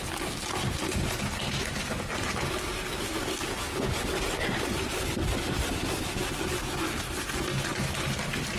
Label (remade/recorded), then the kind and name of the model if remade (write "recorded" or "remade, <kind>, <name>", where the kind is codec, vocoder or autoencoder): recorded